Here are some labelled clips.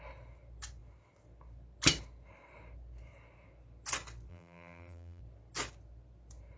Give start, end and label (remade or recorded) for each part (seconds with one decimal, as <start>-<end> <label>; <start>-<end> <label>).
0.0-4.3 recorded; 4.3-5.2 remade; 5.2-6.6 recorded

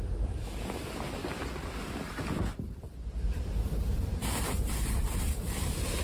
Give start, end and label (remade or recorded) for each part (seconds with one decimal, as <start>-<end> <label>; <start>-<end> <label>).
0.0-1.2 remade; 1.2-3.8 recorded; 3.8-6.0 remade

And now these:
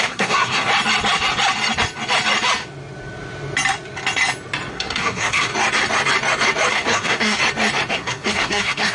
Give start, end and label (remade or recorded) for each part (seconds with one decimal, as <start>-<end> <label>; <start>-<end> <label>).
0.0-0.7 remade; 0.7-4.7 recorded; 4.7-5.5 remade; 5.5-6.7 recorded; 6.7-7.4 remade; 7.4-7.9 recorded; 7.9-8.9 remade